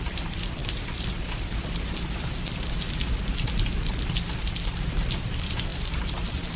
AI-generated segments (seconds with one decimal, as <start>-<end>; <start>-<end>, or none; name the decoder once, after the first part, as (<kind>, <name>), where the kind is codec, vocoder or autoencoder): 0.0-0.6 (vocoder, BigVGAN v2); 4.4-6.6